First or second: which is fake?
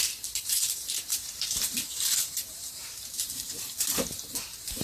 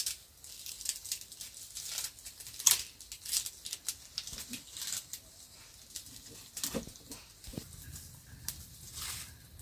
first